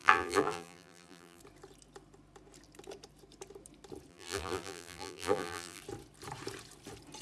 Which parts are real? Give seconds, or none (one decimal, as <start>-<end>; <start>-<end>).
1.4-4.1; 5.8-7.2